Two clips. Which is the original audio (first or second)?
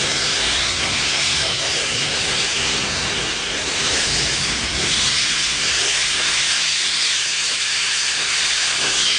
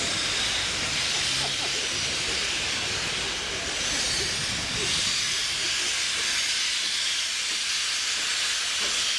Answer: second